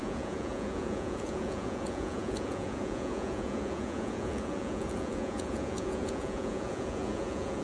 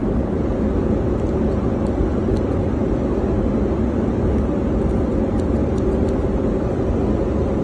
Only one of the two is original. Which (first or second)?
second